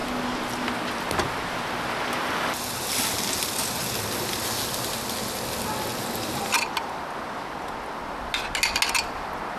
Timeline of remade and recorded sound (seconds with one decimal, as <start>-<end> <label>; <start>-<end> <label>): 0.0-9.6 recorded